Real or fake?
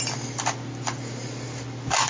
real